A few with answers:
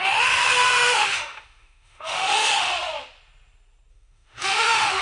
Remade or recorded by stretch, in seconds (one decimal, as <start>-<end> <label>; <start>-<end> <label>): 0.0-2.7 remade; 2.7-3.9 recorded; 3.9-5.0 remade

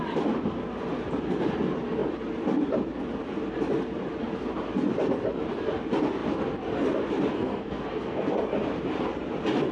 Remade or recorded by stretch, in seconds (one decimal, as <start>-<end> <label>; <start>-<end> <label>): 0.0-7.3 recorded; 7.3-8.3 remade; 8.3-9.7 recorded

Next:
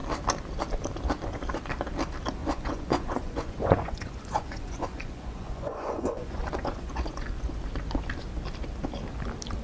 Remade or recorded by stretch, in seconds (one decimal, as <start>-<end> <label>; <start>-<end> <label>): 0.0-2.4 recorded; 2.4-7.5 remade; 7.5-9.6 recorded